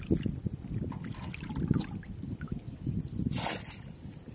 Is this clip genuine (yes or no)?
yes